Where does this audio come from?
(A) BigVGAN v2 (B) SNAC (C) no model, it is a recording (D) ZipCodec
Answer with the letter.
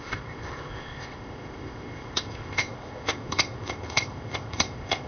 D